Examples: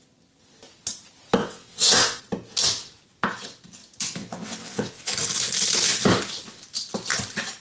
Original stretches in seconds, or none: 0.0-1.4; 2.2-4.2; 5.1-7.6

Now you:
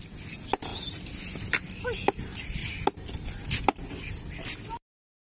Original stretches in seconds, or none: 0.0-5.4

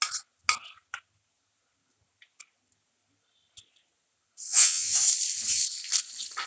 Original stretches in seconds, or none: 0.0-4.5; 5.0-6.5

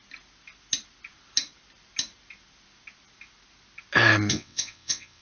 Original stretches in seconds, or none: 0.0-4.3